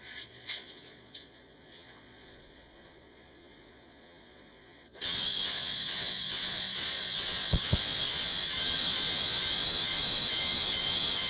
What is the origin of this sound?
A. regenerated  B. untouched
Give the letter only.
A